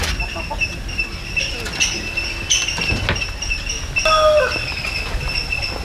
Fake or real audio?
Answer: real